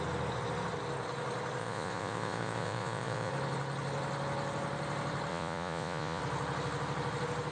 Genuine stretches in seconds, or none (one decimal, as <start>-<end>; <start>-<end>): 0.0-1.6; 3.3-5.3; 6.2-7.5